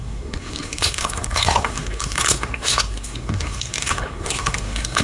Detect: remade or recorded remade